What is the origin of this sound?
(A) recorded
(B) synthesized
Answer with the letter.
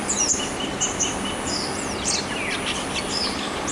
A